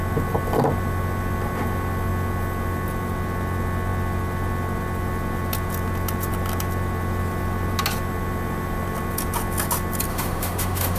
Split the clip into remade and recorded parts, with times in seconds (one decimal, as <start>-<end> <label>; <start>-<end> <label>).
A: 0.0-10.1 recorded; 10.1-11.0 remade